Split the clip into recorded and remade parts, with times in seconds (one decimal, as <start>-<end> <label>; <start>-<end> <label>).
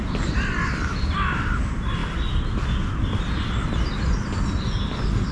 0.0-5.3 recorded